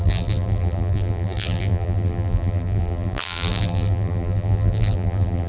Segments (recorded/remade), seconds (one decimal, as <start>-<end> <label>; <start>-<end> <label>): 0.0-5.5 remade